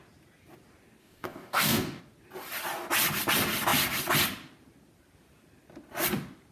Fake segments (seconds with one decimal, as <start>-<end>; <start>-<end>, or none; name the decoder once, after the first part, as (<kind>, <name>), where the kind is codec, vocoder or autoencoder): 1.0-2.0 (codec, DAC)